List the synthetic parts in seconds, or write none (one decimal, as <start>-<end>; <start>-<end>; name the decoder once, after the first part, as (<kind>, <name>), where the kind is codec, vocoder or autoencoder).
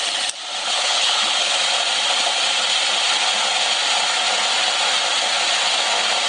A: 0.6-1.5 (codec, HILCodec)